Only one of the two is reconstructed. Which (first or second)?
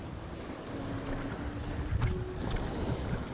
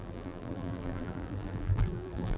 second